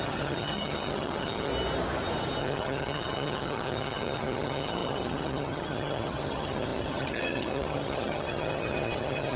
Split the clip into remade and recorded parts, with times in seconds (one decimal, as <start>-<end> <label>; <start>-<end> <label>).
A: 0.0-1.5 remade; 1.5-2.4 recorded; 2.4-9.4 remade